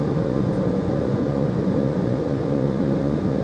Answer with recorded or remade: remade